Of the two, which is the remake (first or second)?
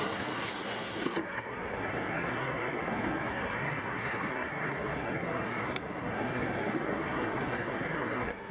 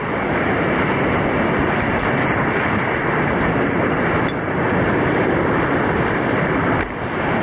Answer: first